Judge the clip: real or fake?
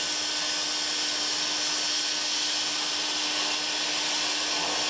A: real